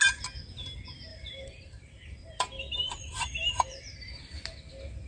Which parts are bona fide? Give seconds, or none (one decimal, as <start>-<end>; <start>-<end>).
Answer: 0.0-1.1; 4.2-5.1